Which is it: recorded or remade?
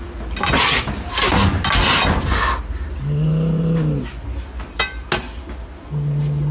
recorded